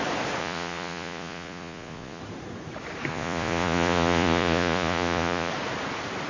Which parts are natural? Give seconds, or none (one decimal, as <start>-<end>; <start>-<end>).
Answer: 0.0-0.4; 2.2-3.1; 5.5-6.3